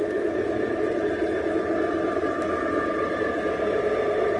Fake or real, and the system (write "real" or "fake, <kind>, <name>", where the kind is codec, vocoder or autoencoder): real